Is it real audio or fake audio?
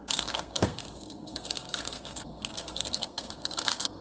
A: fake